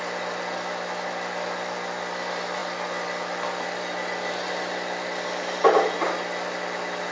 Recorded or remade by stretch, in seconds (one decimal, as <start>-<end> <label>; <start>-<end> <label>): 0.0-7.1 recorded